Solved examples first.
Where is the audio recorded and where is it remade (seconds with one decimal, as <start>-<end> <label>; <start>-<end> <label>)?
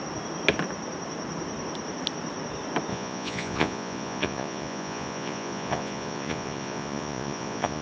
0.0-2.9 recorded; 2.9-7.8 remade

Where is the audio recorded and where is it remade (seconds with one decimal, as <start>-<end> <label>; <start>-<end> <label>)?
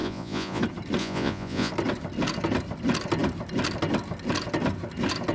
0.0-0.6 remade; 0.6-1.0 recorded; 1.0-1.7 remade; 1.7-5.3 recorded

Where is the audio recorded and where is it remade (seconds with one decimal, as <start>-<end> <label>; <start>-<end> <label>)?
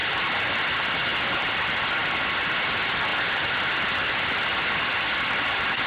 0.0-5.9 recorded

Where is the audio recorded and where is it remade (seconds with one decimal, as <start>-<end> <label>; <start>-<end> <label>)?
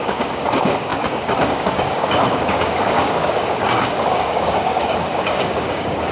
0.0-6.1 remade